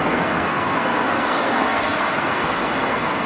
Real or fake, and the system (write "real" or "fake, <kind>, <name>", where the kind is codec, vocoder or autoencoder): fake, codec, SNAC